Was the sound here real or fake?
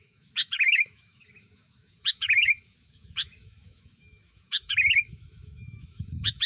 fake